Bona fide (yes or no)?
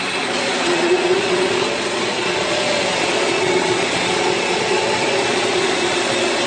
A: no